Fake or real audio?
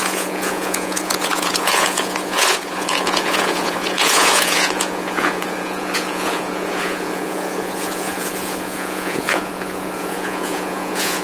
fake